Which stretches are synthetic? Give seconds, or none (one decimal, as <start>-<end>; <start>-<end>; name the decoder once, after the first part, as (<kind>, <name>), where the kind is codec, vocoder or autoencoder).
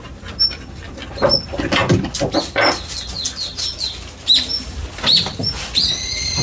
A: none